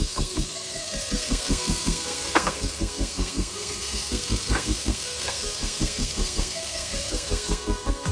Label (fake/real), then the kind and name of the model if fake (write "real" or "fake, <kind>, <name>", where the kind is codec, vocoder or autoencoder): fake, codec, SNAC